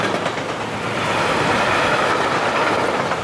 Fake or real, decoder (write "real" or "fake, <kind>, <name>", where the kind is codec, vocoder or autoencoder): real